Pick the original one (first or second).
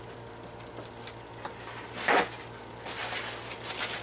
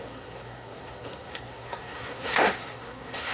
first